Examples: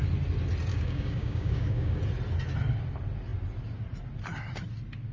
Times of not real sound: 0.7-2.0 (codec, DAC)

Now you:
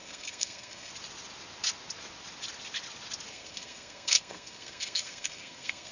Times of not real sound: 0.0-0.9 (codec, SNAC); 3.3-5.9

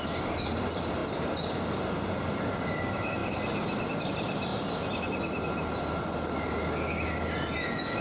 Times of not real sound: 0.0-3.2 (vocoder, BigVGAN v2); 4.1-4.5

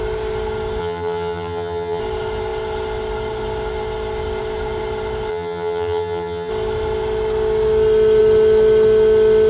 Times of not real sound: 0.8-2.0 (vocoder, HiFi-GAN); 5.3-6.5

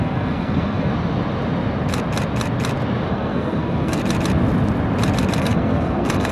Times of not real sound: 0.0-0.9 (codec, SNAC); 3.1-4.0; 5.4-6.3

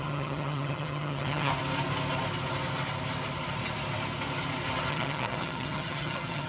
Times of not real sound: 0.0-1.5 (vocoder, HiFi-GAN); 4.9-6.5

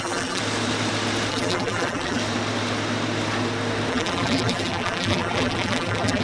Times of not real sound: 0.0-0.4 (vocoder, BigVGAN v2); 1.3-2.2; 3.9-6.2

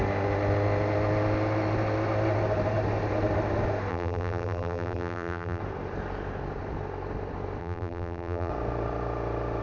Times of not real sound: 3.9-5.6 (vocoder, BigVGAN v2); 7.6-8.5